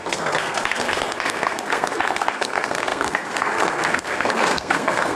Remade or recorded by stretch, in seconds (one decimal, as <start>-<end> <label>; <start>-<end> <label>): 0.0-5.1 remade